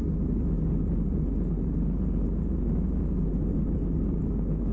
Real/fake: real